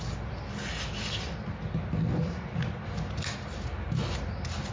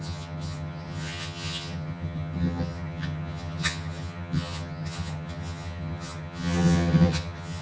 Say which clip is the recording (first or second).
first